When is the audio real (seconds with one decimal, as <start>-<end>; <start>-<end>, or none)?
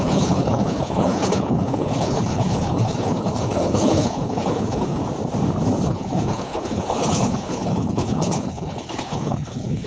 5.0-5.9